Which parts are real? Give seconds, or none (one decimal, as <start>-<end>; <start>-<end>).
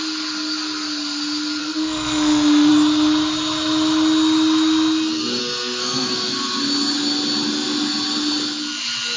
0.0-1.6; 2.7-5.4; 6.4-9.2